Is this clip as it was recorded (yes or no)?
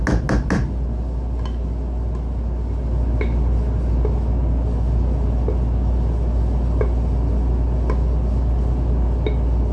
yes